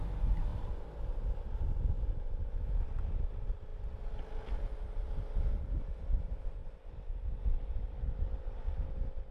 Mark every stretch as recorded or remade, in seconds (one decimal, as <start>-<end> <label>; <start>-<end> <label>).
0.0-6.6 recorded; 6.6-7.4 remade; 7.4-9.3 recorded